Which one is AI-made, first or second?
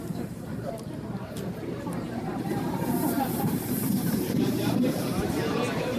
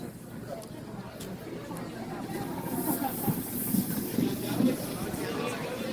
first